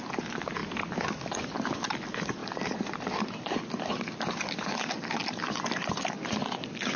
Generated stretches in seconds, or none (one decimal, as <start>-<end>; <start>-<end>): 0.6-1.4; 2.4-6.0